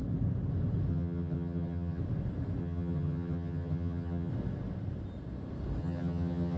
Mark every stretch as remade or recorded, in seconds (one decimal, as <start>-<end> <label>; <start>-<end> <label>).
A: 0.0-0.9 recorded; 0.9-2.0 remade; 2.0-2.6 recorded; 2.6-4.3 remade; 4.3-5.8 recorded; 5.8-6.6 remade

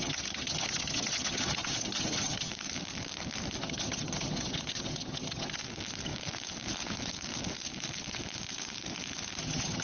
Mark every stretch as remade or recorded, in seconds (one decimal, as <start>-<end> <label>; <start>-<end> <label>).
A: 0.0-2.5 remade; 2.5-3.6 recorded; 3.6-5.6 remade; 5.6-9.4 recorded; 9.4-9.8 remade

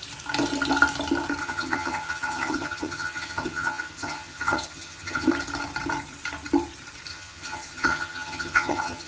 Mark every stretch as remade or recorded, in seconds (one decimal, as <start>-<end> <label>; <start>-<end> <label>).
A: 0.0-1.4 recorded; 1.4-5.3 remade; 5.3-7.1 recorded; 7.1-9.1 remade

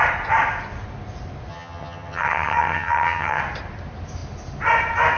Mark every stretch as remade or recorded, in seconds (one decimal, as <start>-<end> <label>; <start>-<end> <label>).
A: 0.0-1.5 recorded; 1.5-3.4 remade; 3.4-5.2 recorded